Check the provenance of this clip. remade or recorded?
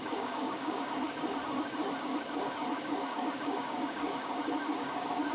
remade